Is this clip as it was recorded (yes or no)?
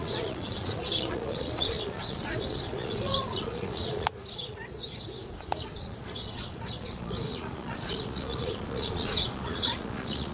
no